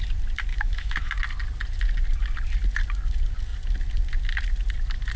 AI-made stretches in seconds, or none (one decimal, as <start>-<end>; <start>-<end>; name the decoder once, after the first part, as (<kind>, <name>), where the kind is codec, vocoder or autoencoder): 0.5-1.2 (autoencoder, DAC-VAE)